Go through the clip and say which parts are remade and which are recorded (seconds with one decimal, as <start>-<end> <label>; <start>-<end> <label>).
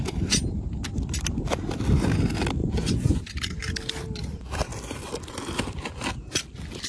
0.0-2.6 recorded; 2.6-3.2 remade; 3.2-6.9 recorded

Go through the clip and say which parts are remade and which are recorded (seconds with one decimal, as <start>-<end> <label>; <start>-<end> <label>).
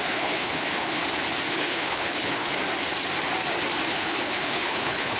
0.0-1.0 remade; 1.0-1.5 recorded; 1.5-2.5 remade; 2.5-3.9 recorded; 3.9-5.2 remade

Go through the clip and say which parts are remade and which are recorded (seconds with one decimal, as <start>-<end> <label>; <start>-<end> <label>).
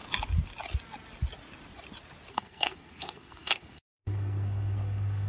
0.0-2.3 recorded; 2.3-5.3 remade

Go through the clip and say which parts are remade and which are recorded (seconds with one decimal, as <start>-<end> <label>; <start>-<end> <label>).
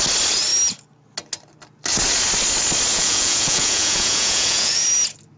0.0-2.9 recorded; 2.9-4.8 remade; 4.8-5.4 recorded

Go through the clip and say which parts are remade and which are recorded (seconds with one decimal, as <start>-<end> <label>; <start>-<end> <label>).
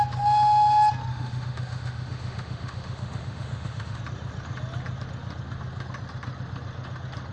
0.0-1.1 recorded; 1.1-4.0 remade; 4.0-7.3 recorded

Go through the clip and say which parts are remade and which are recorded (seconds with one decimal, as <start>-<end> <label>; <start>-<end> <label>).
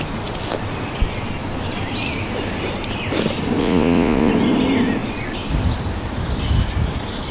0.0-3.6 recorded; 3.6-4.3 remade; 4.3-7.3 recorded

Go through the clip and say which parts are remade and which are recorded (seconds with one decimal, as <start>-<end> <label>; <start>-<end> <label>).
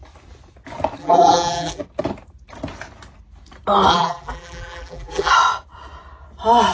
0.0-1.0 recorded; 1.0-1.8 remade; 1.8-3.9 recorded; 3.9-5.3 remade; 5.3-6.7 recorded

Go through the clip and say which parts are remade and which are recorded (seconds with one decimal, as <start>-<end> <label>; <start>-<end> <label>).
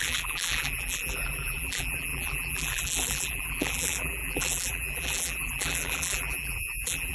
0.0-7.1 remade